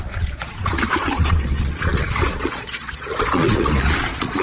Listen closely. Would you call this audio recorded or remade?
remade